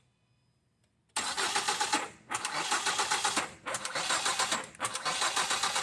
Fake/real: real